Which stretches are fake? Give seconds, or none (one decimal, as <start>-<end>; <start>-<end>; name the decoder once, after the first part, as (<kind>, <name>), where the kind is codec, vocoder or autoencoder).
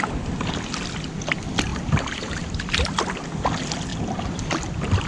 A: 1.7-2.6 (vocoder, BigVGAN v2); 3.9-4.5